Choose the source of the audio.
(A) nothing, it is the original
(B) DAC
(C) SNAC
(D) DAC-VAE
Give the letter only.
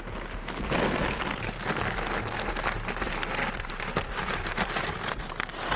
A